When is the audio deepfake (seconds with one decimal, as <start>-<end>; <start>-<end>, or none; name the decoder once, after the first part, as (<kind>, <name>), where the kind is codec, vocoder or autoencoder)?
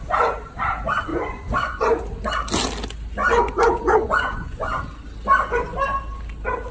1.1-2.0 (vocoder, Vocos); 3.2-4.8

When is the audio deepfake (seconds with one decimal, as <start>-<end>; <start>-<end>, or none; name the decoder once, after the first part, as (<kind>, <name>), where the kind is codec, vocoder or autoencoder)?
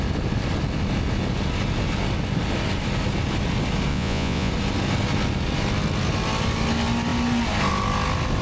3.9-4.5 (vocoder, Vocos)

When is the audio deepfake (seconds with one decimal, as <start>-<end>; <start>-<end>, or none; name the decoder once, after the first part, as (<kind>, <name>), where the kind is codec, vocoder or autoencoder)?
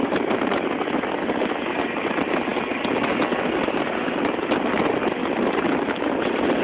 none